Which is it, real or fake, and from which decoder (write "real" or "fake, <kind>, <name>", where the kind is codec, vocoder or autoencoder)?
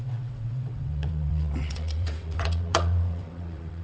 fake, vocoder, WaveNeXt